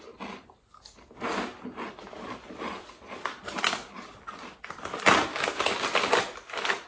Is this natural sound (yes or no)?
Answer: yes